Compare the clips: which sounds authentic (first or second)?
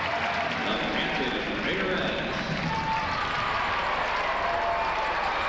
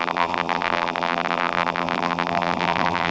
first